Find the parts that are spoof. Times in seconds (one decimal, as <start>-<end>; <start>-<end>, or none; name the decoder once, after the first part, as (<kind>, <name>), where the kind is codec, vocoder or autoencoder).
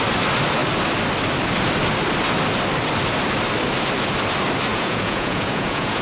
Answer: 4.7-6.0 (vocoder, Vocos)